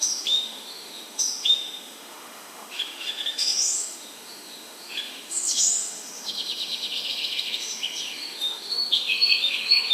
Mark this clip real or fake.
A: fake